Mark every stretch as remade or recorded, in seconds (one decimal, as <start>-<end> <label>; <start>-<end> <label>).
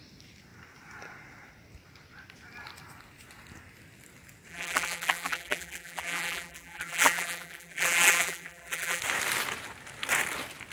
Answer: 0.0-4.5 recorded; 4.5-9.0 remade; 9.0-10.7 recorded